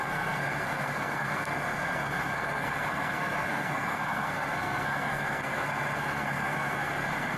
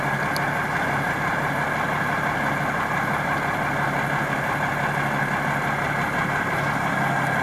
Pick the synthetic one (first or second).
first